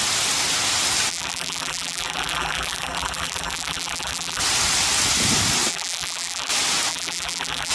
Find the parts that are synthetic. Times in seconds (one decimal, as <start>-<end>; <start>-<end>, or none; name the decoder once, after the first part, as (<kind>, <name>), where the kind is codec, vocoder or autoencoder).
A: 1.1-4.4 (vocoder, BigVGAN v2); 5.7-6.5; 6.9-7.7